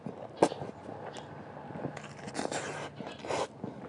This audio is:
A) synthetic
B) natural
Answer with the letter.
B